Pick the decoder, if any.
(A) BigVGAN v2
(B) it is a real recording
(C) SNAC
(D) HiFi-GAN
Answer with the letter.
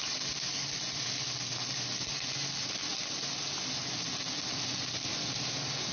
B